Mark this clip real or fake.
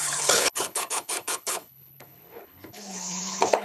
fake